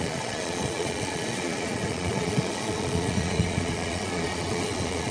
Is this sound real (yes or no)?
no